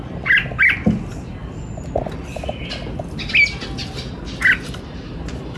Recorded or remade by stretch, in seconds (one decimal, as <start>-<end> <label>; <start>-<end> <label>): 0.0-5.6 recorded